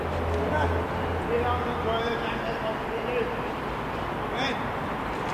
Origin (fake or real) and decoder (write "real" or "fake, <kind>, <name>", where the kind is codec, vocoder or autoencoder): real